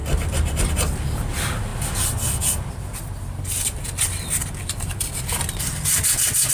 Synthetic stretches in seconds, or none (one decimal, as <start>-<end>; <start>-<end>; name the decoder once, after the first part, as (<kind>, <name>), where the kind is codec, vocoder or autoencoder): 0.0-0.7 (vocoder, BigVGAN v2)